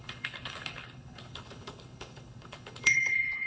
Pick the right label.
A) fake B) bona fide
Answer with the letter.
A